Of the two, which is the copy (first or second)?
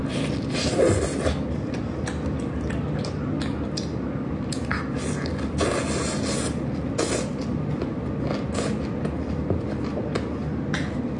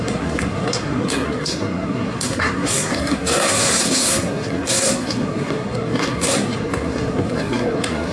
second